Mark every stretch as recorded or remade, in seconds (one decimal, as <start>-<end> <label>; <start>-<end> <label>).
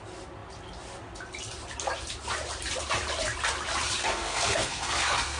0.0-4.0 recorded; 4.0-5.4 remade